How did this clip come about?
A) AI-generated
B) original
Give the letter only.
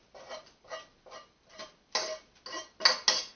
B